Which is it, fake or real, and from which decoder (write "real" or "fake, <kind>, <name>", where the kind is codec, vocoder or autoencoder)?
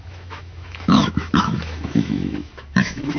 fake, autoencoder, DAC-VAE